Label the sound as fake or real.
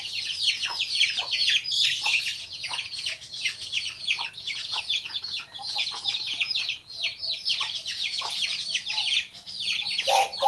fake